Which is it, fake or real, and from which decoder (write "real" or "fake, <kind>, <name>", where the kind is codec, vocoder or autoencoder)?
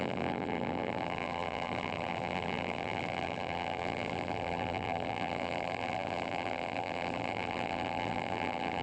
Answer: fake, vocoder, BigVGAN v2